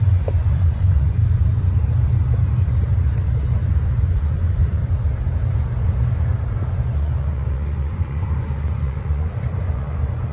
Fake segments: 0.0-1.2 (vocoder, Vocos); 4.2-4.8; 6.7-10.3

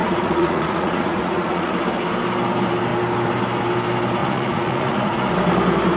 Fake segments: 0.0-1.7 (vocoder, Vocos); 4.2-5.3

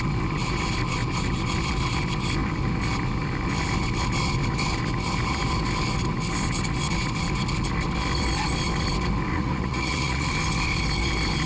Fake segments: 9.3-10.3 (vocoder, Vocos)

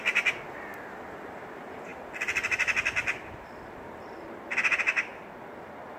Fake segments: none

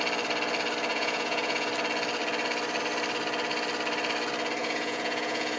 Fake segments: 0.9-1.7 (vocoder, Vocos); 4.6-5.6

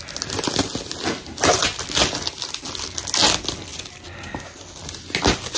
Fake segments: none